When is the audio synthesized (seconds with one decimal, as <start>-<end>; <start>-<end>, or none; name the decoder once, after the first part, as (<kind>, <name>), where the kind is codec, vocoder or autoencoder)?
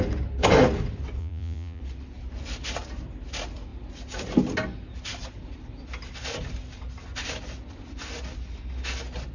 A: 1.2-1.8 (vocoder, Vocos)